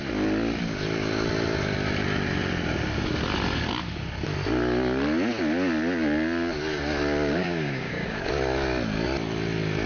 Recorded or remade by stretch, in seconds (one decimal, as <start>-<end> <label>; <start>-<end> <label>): 0.0-7.4 recorded; 7.4-8.3 remade; 8.3-9.9 recorded